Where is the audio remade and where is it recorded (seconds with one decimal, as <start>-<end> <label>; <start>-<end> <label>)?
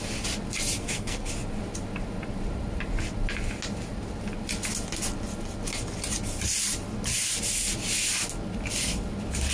0.0-0.8 recorded; 0.8-1.3 remade; 1.3-9.5 recorded